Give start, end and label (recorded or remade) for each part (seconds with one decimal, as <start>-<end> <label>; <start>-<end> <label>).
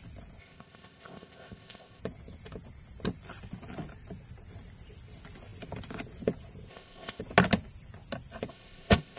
0.0-0.4 recorded; 0.4-2.0 remade; 2.0-6.7 recorded; 6.7-7.2 remade; 7.2-8.5 recorded; 8.5-9.2 remade